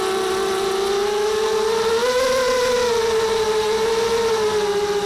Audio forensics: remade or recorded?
recorded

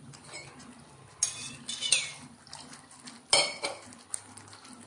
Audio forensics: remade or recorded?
recorded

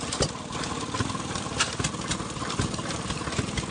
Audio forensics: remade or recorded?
recorded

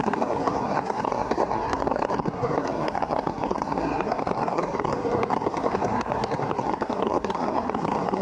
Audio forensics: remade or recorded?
remade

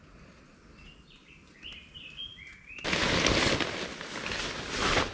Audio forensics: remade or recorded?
recorded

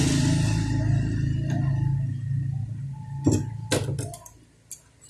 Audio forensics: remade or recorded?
recorded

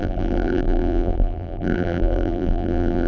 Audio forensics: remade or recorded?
remade